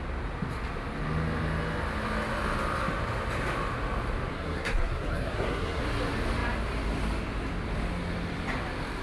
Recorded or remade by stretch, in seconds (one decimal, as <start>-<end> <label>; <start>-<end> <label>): 0.0-4.3 recorded; 4.3-5.8 remade; 5.8-9.0 recorded